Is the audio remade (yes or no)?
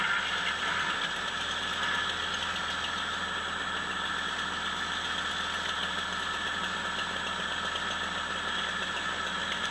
no